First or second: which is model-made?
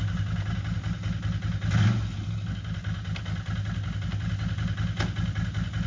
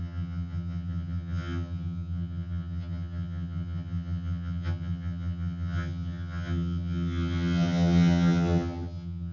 second